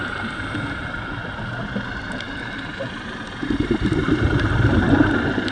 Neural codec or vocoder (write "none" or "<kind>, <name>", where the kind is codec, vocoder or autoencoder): vocoder, BigVGAN v2